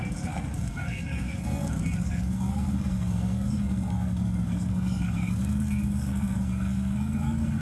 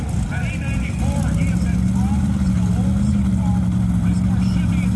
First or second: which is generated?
first